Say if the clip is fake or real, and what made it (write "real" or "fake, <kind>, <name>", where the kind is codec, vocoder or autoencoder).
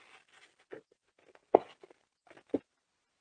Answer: real